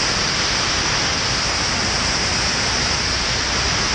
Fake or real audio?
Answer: real